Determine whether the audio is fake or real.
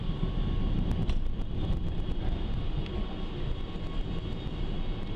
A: real